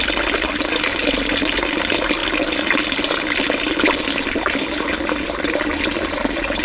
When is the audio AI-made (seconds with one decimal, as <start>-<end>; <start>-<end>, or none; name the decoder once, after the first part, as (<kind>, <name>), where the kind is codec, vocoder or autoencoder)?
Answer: none